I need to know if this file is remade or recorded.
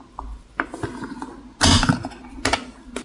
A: recorded